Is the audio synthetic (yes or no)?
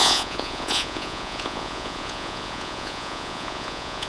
yes